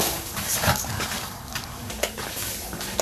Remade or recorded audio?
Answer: remade